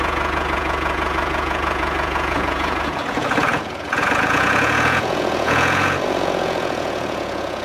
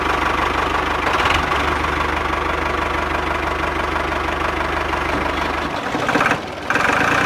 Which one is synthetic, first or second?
first